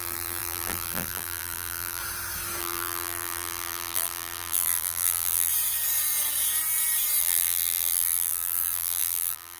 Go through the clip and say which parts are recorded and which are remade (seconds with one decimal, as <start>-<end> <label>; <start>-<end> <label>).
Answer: 0.0-2.0 remade; 2.0-2.6 recorded; 2.6-5.5 remade; 5.5-7.2 recorded; 7.2-9.6 remade

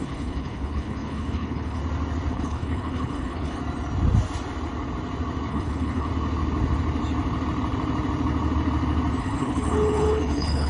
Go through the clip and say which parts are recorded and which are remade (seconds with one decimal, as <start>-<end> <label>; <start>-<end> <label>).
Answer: 0.0-1.8 remade; 1.8-2.3 recorded; 2.3-3.6 remade; 3.6-5.5 recorded; 5.5-6.1 remade; 6.1-9.2 recorded; 9.2-10.7 remade